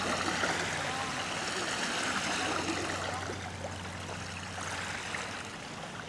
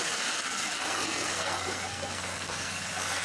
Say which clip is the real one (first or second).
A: first